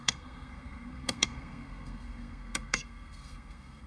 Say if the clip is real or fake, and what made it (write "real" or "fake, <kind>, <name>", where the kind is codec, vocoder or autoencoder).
fake, codec, SNAC